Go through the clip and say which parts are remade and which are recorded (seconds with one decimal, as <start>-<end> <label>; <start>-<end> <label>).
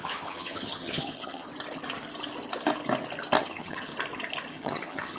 0.0-1.5 remade; 1.5-3.4 recorded; 3.4-3.9 remade; 3.9-4.5 recorded; 4.5-5.2 remade